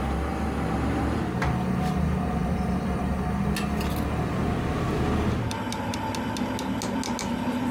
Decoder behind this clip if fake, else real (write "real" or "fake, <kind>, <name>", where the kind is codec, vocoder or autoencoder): real